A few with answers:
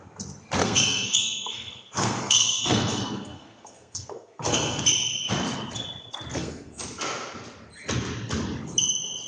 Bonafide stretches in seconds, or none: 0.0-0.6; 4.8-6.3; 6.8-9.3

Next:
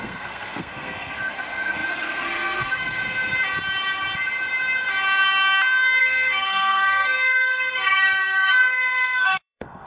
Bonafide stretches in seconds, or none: 3.0-6.0

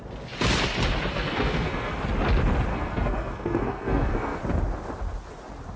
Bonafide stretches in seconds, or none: 0.0-1.1; 2.0-2.7; 4.4-5.8

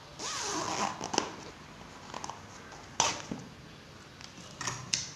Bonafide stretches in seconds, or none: 0.0-5.2

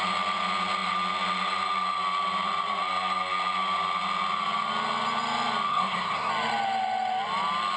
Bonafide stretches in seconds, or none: 0.0-5.7; 6.3-7.8